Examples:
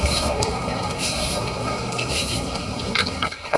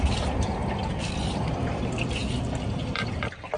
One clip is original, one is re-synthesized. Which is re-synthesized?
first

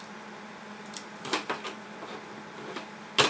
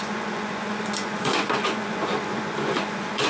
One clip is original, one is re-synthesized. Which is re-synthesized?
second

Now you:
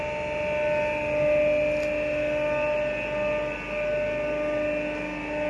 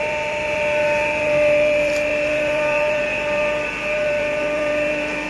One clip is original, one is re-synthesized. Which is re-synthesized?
second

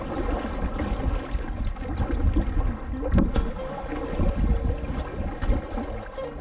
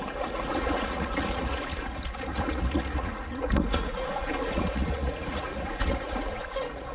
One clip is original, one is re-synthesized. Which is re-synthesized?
second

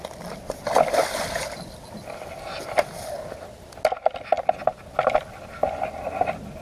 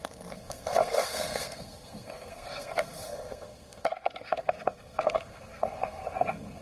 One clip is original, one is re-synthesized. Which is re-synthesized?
second